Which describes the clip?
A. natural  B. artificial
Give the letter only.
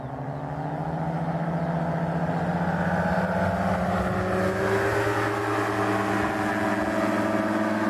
A